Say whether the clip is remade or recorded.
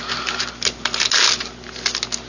recorded